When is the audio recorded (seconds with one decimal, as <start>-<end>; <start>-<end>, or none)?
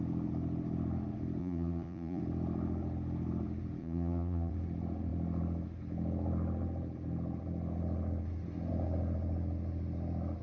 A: 0.0-1.4; 2.2-3.8; 4.5-10.4